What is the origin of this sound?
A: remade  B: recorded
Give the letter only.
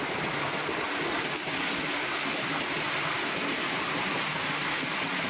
B